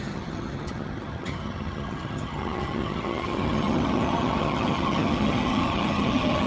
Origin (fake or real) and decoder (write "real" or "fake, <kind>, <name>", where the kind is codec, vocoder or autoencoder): fake, vocoder, HiFi-GAN